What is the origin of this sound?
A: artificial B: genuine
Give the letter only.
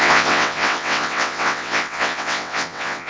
A